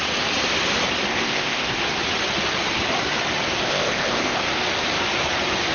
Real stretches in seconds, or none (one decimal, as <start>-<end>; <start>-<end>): 0.0-1.1; 1.8-3.6; 4.4-5.7